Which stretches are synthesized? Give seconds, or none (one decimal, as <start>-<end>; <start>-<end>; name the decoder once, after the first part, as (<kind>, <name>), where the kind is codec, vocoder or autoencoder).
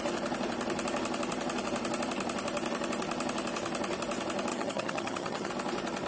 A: 4.5-5.5 (vocoder, HiFi-GAN)